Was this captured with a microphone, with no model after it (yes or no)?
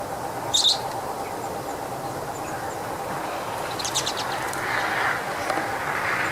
yes